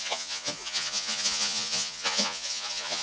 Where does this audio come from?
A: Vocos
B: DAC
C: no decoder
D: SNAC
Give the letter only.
A